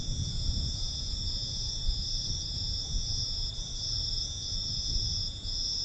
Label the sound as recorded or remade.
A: remade